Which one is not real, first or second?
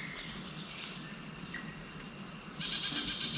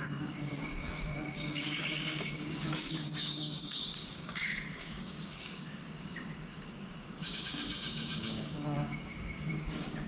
second